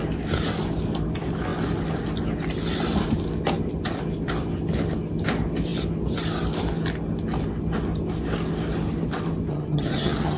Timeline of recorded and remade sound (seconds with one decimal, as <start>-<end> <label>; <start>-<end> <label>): 0.0-9.5 recorded; 9.5-10.4 remade